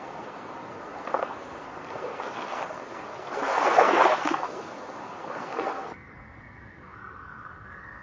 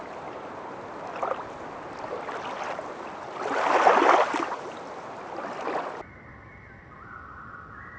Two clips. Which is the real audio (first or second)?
second